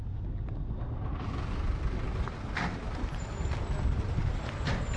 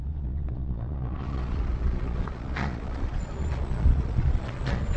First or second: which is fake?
second